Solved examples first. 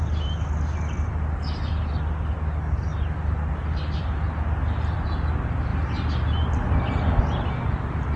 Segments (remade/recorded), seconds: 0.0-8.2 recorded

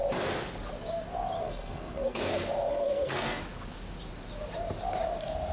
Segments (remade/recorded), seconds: 0.0-1.4 recorded; 1.4-2.2 remade; 2.2-2.7 recorded; 2.7-3.4 remade; 3.4-5.5 recorded

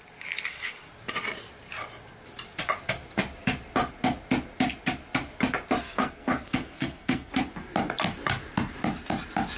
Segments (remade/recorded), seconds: 0.0-5.8 recorded; 5.8-7.4 remade; 7.4-9.6 recorded

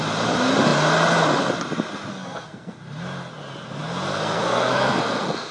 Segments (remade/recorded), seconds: 0.0-2.1 recorded; 2.1-2.8 remade; 2.8-4.1 recorded; 4.1-5.5 remade

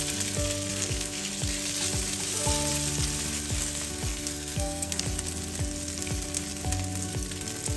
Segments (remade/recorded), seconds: 0.0-0.7 recorded; 0.7-1.3 remade; 1.3-4.1 recorded; 4.1-5.0 remade; 5.0-7.8 recorded

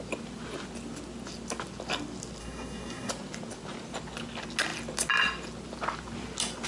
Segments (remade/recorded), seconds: 0.0-2.4 recorded; 2.4-3.1 remade; 3.1-6.7 recorded

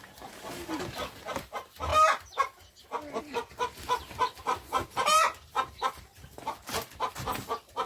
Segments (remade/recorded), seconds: 0.0-7.9 recorded

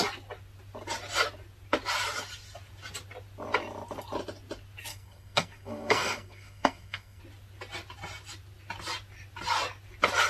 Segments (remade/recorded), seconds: 0.0-4.9 recorded; 4.9-7.2 remade; 7.2-10.3 recorded